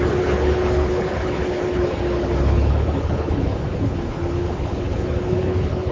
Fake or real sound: fake